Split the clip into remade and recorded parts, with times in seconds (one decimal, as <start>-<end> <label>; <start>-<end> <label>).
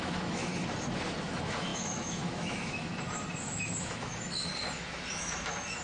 0.0-0.5 remade; 0.5-1.2 recorded; 1.2-2.9 remade; 2.9-3.4 recorded; 3.4-4.5 remade; 4.5-5.1 recorded; 5.1-5.8 remade